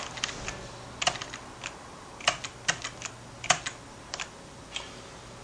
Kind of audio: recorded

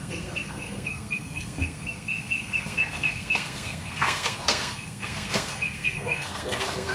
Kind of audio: remade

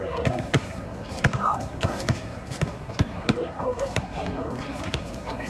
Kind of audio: remade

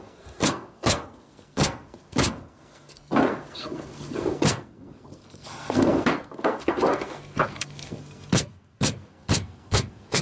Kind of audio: remade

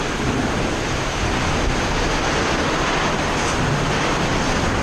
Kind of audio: recorded